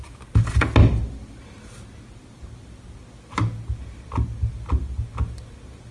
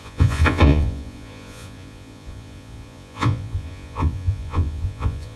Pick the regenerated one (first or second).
second